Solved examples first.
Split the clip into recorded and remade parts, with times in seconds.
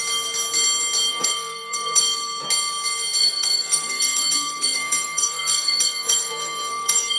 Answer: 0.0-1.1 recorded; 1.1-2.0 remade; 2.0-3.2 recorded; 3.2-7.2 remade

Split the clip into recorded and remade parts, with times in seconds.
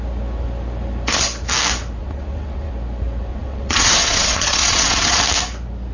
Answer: 0.0-2.0 recorded; 2.0-2.7 remade; 2.7-3.3 recorded; 3.3-5.2 remade; 5.2-5.9 recorded